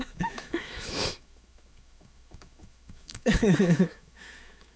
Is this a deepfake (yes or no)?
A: yes